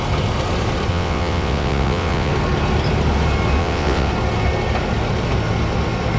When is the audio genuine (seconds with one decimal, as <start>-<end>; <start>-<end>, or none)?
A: 0.0-0.9; 2.3-3.6; 4.1-6.2